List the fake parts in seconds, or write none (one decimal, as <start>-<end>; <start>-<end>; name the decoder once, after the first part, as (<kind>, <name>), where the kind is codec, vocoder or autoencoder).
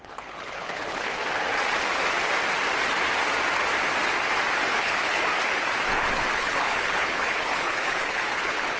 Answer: 0.0-1.1 (codec, HILCodec); 4.7-5.3; 5.9-8.8